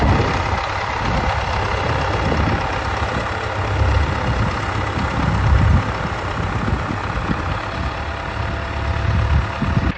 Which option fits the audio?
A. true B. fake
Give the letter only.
A